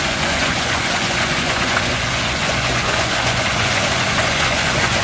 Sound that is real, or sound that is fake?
fake